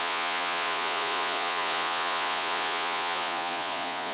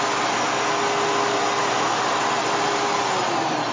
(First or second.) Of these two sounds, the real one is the second